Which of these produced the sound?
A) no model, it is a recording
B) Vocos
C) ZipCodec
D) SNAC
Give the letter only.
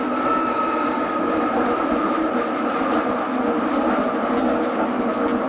A